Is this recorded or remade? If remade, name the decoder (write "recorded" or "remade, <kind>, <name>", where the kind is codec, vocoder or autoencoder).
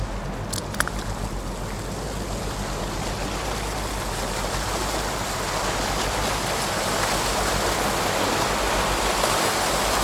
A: recorded